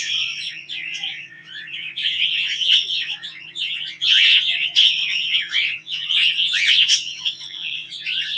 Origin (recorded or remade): remade